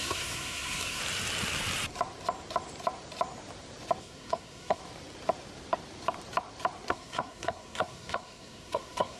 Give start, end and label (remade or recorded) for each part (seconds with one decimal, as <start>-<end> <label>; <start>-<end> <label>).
0.0-1.0 remade; 1.0-4.0 recorded; 4.0-4.8 remade; 4.8-6.9 recorded; 6.9-9.2 remade